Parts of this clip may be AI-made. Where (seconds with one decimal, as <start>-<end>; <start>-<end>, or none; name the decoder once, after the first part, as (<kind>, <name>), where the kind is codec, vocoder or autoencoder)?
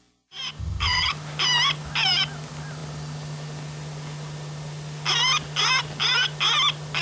0.6-1.1 (vocoder, HiFi-GAN)